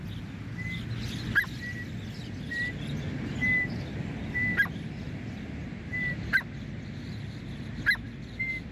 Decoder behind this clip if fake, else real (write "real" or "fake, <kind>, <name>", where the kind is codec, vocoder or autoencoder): real